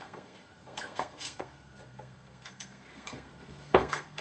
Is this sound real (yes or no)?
no